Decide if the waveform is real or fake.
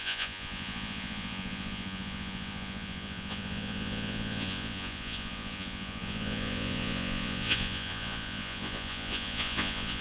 fake